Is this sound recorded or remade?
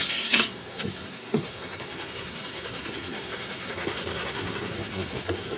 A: remade